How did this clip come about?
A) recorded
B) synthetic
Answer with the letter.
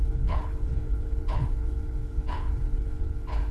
B